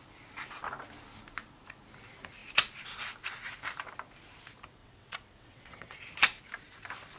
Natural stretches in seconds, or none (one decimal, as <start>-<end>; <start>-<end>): 0.0-4.8; 6.0-7.2